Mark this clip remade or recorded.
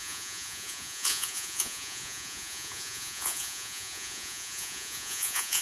remade